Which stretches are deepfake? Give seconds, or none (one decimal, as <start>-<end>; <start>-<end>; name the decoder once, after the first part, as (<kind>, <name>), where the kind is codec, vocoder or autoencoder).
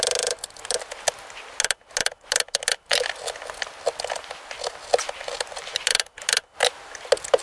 none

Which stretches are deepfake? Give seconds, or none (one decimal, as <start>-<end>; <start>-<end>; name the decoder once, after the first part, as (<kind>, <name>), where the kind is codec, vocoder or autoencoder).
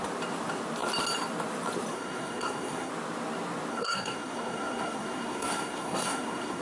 1.9-2.9 (codec, SNAC); 3.7-6.6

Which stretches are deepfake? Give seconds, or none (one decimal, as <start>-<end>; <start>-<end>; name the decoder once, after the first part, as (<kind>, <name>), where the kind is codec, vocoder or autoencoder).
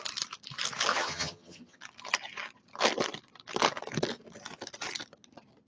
0.9-1.8 (vocoder, HiFi-GAN)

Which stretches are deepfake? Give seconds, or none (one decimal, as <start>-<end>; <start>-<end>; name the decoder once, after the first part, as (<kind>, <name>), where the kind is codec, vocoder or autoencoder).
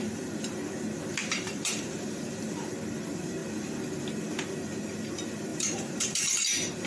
1.2-2.7 (vocoder, BigVGAN v2); 5.5-6.4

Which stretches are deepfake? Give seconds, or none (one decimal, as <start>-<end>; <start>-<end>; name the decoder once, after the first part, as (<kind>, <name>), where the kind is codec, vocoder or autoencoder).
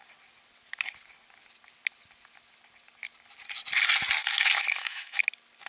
4.2-5.2 (autoencoder, DAC-VAE)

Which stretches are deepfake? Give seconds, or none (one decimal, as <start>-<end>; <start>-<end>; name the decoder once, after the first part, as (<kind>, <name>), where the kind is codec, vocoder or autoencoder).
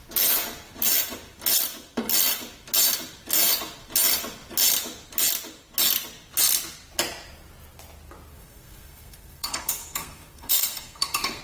8.3-11.4 (codec, SNAC)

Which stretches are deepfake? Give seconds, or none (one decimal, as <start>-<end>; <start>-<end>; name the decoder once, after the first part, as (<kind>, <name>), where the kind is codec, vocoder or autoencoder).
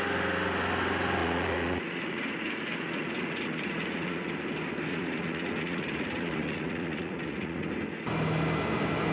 1.2-4.3 (vocoder, Vocos); 4.9-7.7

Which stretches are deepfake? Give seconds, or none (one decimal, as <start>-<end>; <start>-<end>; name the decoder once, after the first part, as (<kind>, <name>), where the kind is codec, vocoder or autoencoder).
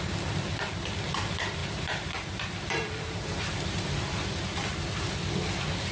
1.6-4.4 (vocoder, BigVGAN v2)